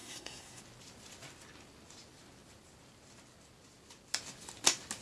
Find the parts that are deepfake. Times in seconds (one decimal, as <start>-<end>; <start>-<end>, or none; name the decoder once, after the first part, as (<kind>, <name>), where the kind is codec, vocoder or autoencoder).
0.0-0.6 (codec, SNAC)